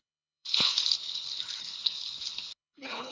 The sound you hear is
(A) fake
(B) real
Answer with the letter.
A